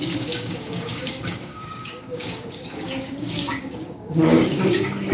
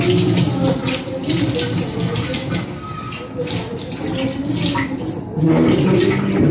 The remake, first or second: first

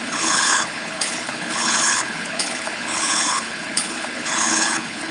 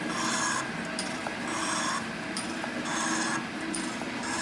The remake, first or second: first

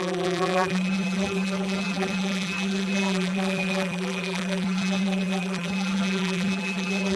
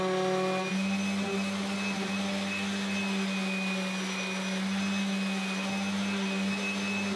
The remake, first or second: first